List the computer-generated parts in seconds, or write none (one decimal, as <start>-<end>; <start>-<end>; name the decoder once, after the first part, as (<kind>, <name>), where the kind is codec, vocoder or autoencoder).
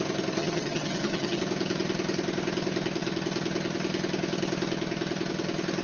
0.4-1.4 (vocoder, HiFi-GAN)